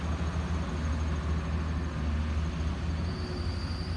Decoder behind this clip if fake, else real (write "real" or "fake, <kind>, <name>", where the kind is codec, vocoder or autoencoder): real